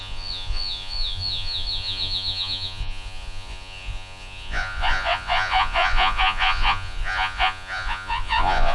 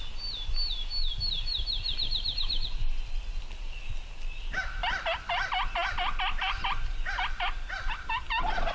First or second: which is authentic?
second